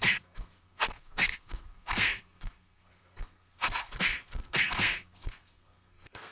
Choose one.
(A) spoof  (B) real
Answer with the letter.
A